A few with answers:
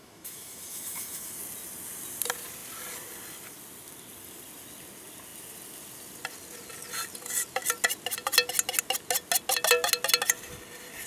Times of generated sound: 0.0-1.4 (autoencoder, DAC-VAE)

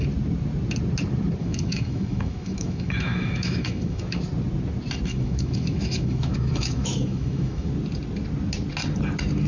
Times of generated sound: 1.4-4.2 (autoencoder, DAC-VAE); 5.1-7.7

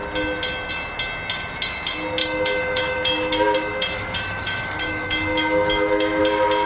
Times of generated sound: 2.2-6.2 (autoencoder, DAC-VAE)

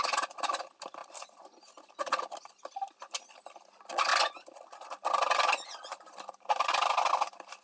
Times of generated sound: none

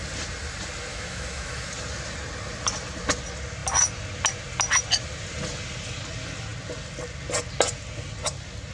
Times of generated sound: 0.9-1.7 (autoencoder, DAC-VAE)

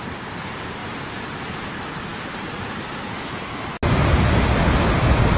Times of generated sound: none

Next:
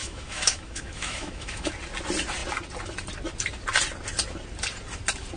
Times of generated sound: 0.0-1.7 (autoencoder, DAC-VAE)